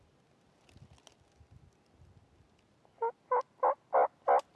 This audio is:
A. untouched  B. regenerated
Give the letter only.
A